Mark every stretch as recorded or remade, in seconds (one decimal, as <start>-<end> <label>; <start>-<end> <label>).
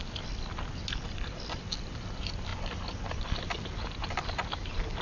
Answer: 0.0-5.0 recorded